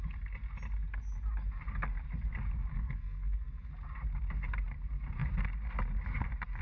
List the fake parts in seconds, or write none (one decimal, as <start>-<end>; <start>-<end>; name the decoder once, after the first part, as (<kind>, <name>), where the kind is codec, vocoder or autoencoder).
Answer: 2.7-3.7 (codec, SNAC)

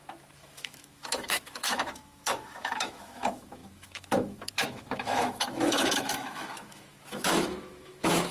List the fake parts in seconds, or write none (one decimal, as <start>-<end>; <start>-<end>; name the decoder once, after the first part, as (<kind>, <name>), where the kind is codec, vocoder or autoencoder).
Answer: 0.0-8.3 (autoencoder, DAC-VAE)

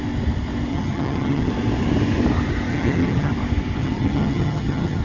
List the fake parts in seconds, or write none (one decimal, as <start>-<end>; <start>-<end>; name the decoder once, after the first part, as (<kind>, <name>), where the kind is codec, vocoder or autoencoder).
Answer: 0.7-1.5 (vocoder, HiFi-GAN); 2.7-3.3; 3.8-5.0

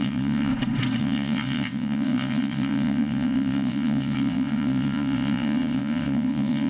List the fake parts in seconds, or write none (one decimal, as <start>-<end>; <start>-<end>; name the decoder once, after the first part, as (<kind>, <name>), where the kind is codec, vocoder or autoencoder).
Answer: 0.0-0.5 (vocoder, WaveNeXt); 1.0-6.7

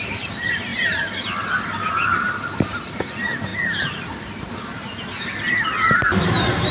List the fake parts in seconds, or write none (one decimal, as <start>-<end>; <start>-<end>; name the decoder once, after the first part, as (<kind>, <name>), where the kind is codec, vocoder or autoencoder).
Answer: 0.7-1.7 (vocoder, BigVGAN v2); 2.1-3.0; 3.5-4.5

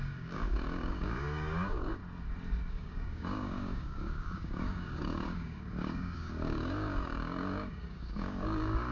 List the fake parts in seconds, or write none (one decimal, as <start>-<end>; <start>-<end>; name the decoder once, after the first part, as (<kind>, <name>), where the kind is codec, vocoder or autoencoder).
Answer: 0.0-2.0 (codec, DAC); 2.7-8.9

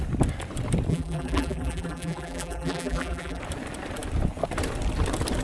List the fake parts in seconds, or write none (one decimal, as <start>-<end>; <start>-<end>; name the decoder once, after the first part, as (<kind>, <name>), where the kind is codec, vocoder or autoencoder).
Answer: 0.9-3.4 (vocoder, BigVGAN v2)

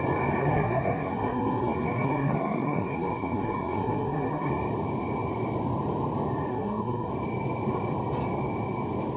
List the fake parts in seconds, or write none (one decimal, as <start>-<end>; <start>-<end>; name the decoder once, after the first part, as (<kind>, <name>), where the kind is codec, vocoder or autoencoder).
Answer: 0.4-4.5 (codec, SNAC); 6.5-7.1